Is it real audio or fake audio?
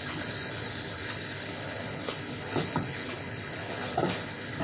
fake